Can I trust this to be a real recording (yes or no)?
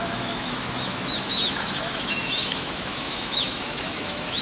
no